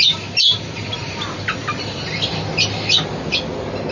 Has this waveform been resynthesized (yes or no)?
no